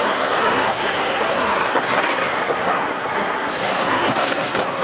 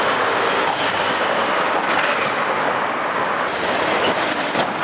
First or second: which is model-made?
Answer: first